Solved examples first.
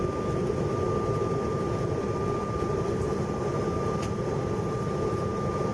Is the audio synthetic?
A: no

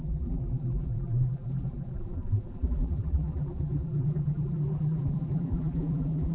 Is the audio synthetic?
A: yes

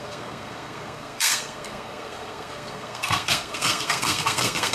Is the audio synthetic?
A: yes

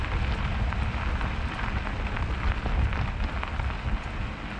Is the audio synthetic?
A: no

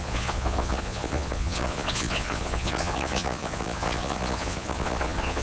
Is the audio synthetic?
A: yes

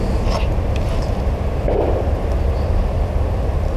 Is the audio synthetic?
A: no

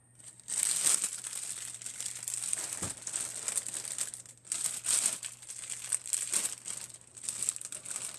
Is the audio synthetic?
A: no